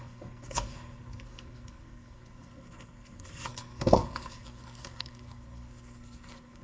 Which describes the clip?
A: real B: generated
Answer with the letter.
B